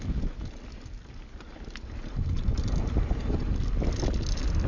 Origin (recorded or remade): recorded